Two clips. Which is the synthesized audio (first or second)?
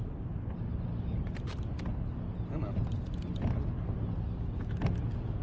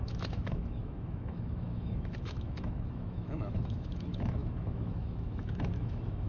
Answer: second